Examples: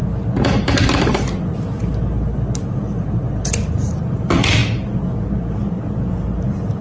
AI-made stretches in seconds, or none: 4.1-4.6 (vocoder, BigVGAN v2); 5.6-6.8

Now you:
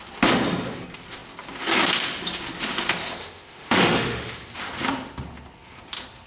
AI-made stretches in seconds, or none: 3.2-4.5 (autoencoder, DAC-VAE)

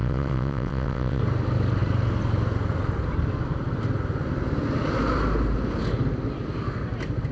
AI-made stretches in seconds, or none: 0.0-1.2 (vocoder, WaveNeXt)

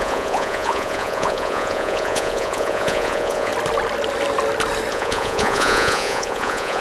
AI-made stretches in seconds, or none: 0.0-3.5 (vocoder, Vocos); 4.9-6.8

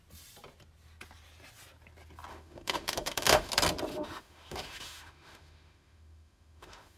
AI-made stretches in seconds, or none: 2.3-3.5 (autoencoder, DAC-VAE); 3.9-7.0

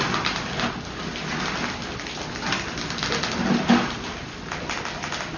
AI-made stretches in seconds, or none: none